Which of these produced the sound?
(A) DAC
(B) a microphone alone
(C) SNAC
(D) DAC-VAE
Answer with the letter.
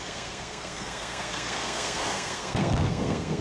C